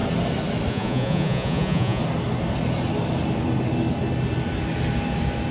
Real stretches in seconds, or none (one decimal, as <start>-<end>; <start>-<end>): 0.0-0.7; 2.0-5.5

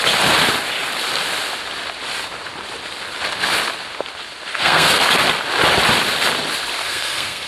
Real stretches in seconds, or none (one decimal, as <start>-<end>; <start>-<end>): 0.0-4.5; 5.1-6.8

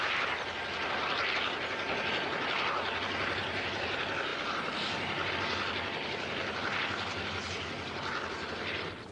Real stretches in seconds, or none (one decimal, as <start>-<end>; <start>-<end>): 0.0-9.1